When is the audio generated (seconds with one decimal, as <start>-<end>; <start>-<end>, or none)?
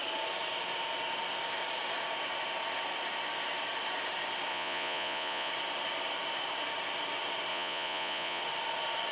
4.5-5.5; 7.5-8.4